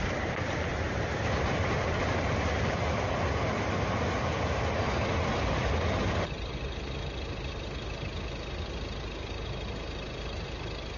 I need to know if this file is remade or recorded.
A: recorded